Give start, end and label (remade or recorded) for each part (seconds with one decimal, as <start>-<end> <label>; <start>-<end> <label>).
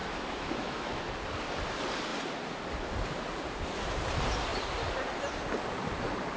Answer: 0.0-1.1 remade; 1.1-6.4 recorded